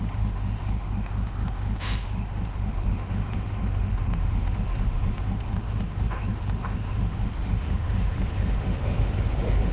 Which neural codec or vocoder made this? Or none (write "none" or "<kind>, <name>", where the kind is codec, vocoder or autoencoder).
autoencoder, DAC-VAE